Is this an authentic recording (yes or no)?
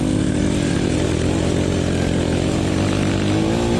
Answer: yes